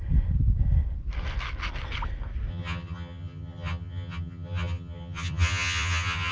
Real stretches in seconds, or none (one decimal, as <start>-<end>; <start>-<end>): 0.0-2.5